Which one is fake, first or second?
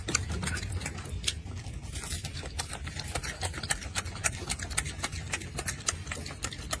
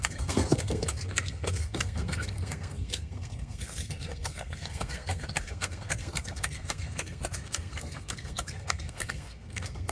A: second